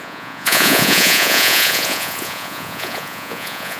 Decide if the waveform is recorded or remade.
remade